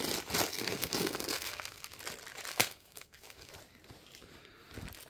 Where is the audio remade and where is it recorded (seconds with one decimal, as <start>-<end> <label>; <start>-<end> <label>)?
0.0-0.5 recorded; 0.5-2.0 remade; 2.0-2.5 recorded; 2.5-3.5 remade; 3.5-5.1 recorded